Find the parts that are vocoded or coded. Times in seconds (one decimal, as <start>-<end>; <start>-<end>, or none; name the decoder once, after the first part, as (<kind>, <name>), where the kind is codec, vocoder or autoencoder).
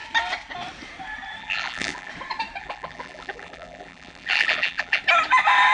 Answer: 1.4-2.1 (vocoder, BigVGAN v2); 2.6-5.0